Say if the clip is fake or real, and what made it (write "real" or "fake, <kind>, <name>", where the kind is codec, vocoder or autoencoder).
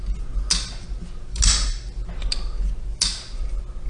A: real